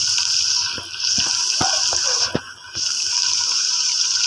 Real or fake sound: real